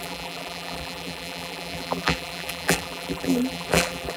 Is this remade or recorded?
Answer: remade